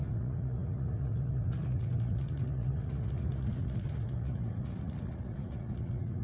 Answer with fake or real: fake